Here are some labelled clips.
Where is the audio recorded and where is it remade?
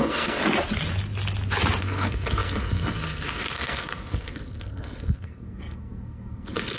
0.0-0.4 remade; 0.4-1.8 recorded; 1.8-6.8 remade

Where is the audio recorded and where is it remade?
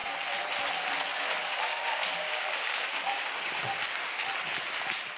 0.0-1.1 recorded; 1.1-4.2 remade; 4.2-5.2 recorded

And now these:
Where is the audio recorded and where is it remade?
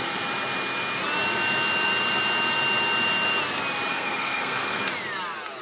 0.0-3.9 recorded; 3.9-4.8 remade; 4.8-5.6 recorded